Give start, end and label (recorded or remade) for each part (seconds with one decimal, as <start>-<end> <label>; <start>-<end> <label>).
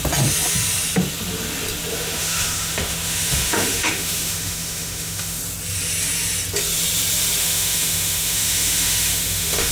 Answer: 0.0-1.9 recorded; 1.9-5.4 remade; 5.4-7.4 recorded; 7.4-9.7 remade